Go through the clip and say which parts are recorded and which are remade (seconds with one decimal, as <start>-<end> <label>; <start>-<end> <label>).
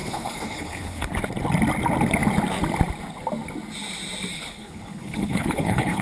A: 0.0-1.1 remade; 1.1-4.3 recorded; 4.3-6.0 remade